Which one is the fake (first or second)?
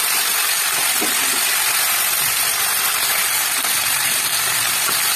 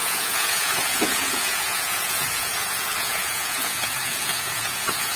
second